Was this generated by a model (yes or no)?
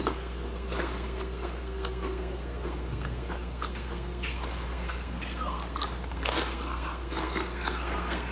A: yes